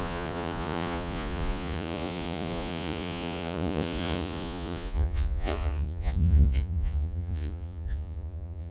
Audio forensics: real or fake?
fake